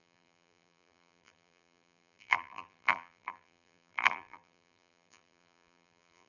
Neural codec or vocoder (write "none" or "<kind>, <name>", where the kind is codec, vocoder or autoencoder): vocoder, BigVGAN v2